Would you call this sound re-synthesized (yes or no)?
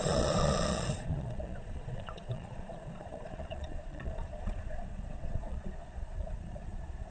yes